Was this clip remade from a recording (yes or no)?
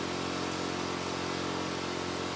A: no